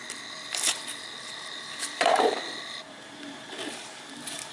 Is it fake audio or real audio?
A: fake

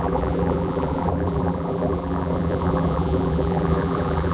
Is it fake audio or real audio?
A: fake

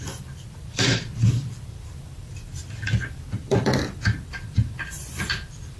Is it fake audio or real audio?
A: fake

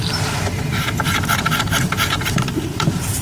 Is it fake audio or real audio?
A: fake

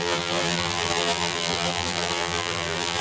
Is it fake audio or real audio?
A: fake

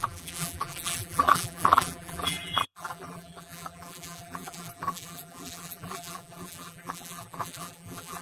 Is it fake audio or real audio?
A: fake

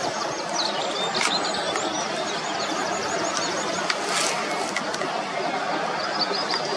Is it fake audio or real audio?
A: real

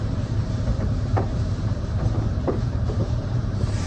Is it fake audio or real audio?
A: fake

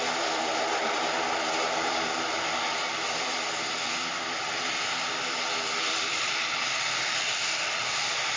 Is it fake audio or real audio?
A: fake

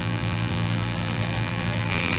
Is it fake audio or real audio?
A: fake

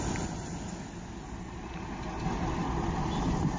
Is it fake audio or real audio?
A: real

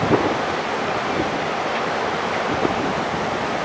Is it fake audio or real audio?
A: fake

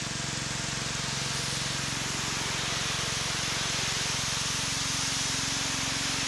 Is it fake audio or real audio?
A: real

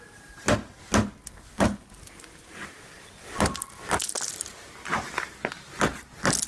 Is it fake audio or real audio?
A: real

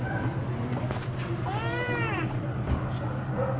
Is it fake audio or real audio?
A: fake